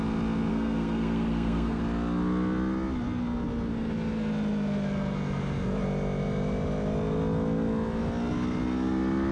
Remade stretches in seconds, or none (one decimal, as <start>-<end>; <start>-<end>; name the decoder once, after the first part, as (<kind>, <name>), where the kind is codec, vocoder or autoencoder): 0.5-1.8 (codec, SNAC)